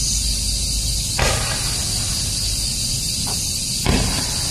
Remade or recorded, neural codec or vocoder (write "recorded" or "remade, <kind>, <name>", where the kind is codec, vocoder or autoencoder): recorded